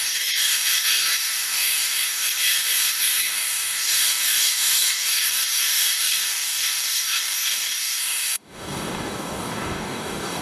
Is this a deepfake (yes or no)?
yes